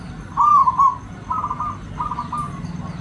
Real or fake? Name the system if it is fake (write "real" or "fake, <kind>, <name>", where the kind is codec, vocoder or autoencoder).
real